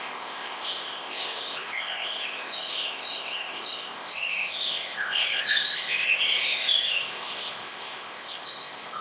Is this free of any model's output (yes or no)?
no